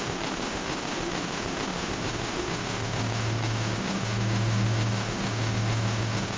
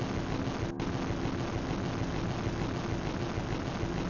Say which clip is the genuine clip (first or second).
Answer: second